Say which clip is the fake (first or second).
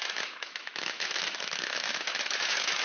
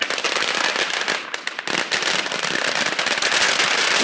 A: first